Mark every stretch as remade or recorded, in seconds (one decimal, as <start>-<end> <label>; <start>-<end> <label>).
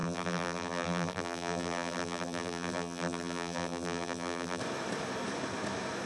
0.0-4.6 remade; 4.6-6.1 recorded